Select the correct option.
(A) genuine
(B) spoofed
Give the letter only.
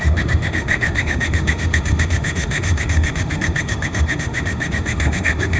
B